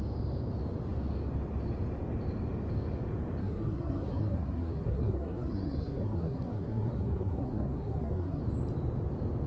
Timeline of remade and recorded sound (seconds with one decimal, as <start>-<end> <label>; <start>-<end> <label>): 0.0-3.4 recorded; 3.4-8.4 remade; 8.4-9.5 recorded